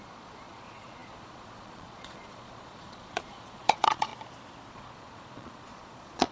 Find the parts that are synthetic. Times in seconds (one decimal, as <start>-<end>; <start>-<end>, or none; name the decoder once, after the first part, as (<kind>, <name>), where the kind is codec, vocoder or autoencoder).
0.0-4.1 (vocoder, Vocos); 4.7-6.3